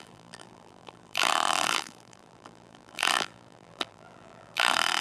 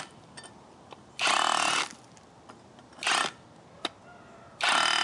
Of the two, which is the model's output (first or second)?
first